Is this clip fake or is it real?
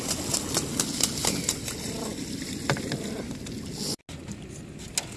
real